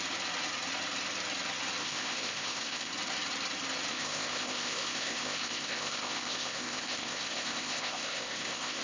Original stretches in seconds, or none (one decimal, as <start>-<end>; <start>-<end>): 0.0-1.8; 2.9-3.9